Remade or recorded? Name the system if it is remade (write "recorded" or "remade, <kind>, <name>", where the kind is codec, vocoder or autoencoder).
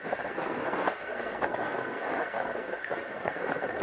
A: remade, codec, SNAC